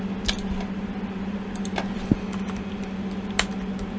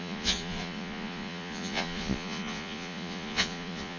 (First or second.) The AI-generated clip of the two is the second